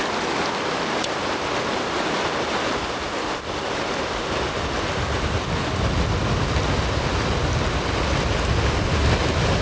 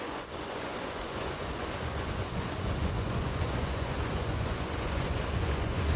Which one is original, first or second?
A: first